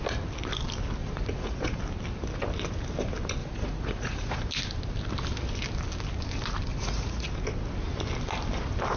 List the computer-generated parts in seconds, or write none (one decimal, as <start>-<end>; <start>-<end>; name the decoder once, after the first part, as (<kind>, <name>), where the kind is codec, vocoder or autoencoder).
1.0-1.8 (vocoder, Vocos); 3.4-4.4; 6.7-7.3

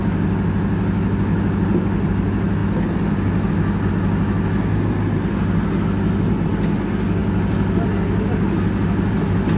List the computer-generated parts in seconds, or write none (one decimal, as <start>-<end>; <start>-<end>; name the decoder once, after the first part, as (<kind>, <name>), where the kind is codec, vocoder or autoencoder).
none

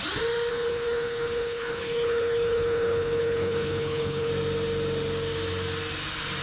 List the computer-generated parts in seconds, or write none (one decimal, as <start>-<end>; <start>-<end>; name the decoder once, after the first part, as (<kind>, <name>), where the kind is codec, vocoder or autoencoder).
0.5-4.3 (codec, HILCodec)

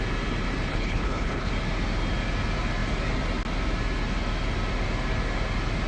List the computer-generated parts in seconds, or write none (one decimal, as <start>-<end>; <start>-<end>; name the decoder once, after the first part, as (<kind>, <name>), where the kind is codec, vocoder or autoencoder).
0.7-1.5 (codec, HILCodec)

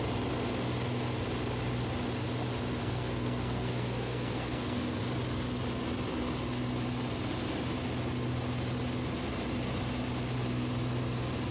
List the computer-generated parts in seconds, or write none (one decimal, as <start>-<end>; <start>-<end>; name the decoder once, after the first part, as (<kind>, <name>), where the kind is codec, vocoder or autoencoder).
2.8-5.0 (codec, SNAC)

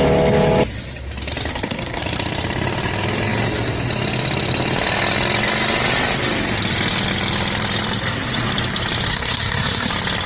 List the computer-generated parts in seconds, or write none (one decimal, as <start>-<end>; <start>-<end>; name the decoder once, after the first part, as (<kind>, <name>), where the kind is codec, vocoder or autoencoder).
1.5-2.0 (codec, SNAC); 9.1-9.9